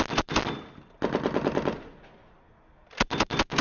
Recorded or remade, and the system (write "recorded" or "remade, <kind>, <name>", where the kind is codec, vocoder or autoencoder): recorded